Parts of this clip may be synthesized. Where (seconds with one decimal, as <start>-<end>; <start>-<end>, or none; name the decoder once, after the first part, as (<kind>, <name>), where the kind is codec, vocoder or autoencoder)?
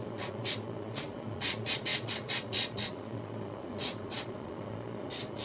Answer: 0.0-5.4 (vocoder, Vocos)